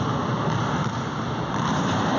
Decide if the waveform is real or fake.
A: real